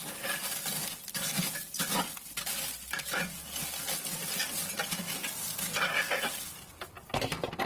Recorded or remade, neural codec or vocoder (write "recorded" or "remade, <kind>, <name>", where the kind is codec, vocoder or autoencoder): recorded